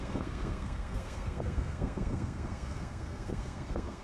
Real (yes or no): no